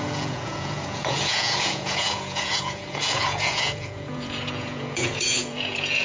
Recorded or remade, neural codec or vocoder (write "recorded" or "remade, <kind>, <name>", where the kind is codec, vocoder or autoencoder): remade, vocoder, Vocos